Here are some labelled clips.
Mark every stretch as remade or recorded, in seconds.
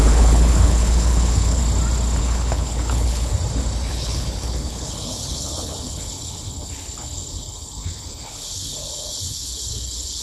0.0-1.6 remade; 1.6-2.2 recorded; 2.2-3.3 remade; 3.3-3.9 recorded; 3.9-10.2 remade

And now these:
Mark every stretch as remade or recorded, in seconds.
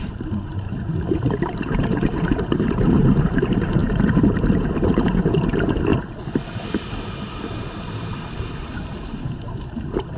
0.0-5.9 remade; 5.9-8.6 recorded; 8.6-10.2 remade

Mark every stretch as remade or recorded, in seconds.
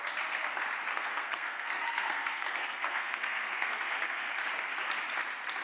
0.0-0.9 recorded; 0.9-4.3 remade; 4.3-5.6 recorded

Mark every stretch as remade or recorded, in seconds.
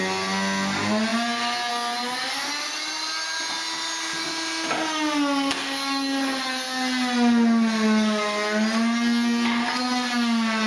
0.0-10.7 recorded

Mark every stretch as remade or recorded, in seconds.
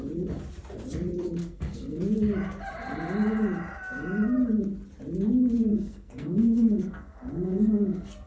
0.0-1.4 recorded; 1.4-2.0 remade; 2.0-5.7 recorded; 5.7-8.3 remade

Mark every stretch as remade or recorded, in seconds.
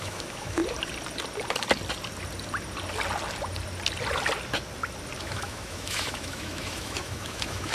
0.0-0.6 remade; 0.6-5.2 recorded; 5.2-7.7 remade